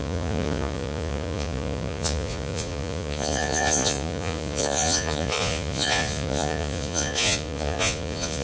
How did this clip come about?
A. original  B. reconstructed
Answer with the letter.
B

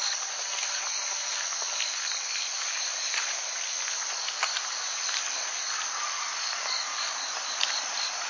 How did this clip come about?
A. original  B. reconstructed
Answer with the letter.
A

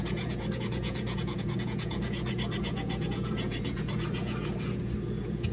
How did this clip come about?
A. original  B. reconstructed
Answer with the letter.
B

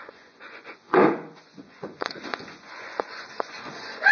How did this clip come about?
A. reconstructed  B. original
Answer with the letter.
A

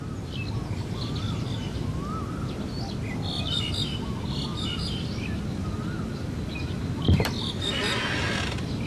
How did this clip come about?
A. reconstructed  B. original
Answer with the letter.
B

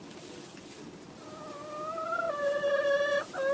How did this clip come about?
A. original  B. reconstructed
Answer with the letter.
A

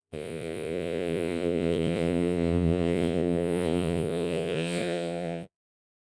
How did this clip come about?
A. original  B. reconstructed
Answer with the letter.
B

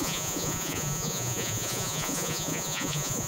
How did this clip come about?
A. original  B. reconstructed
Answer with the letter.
B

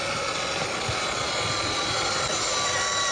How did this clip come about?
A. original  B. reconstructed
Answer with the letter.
A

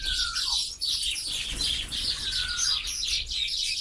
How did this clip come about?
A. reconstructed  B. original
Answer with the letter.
A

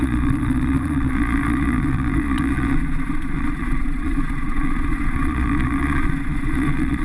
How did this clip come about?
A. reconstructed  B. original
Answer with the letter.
A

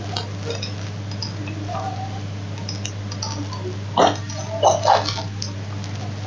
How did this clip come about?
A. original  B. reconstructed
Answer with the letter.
A